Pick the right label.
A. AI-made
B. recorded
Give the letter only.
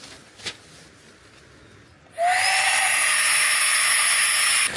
B